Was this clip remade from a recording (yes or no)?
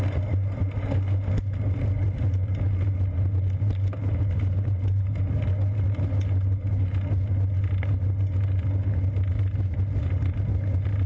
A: no